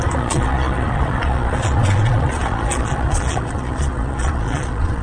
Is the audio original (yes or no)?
no